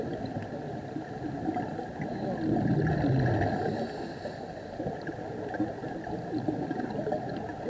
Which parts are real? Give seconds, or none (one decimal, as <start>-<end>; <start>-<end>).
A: 0.0-7.7